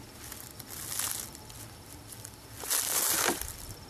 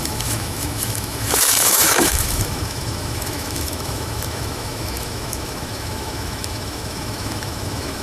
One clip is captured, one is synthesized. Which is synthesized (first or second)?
second